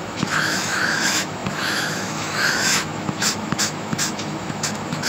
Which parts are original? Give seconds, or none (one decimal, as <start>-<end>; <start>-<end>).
none